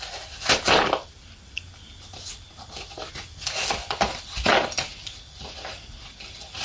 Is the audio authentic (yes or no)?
yes